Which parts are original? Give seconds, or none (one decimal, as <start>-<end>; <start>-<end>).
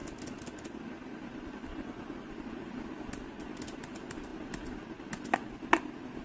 0.0-1.7; 2.3-6.2